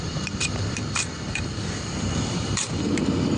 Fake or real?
fake